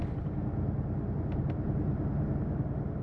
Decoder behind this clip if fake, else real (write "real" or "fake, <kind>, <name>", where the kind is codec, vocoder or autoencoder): real